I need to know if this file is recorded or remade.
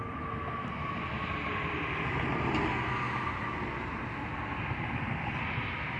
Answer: recorded